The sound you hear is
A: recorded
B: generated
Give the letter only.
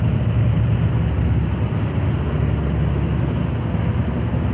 A